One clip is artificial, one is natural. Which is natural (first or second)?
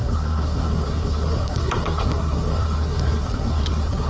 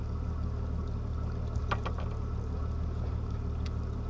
second